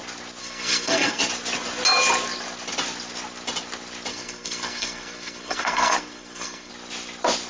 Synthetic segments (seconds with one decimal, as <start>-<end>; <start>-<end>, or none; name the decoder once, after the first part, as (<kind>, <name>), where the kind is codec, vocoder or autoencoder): 0.4-1.2 (codec, SNAC); 4.1-6.7